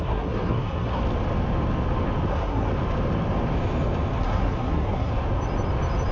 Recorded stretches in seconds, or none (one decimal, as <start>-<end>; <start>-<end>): 1.0-2.3; 2.7-4.2; 5.1-6.1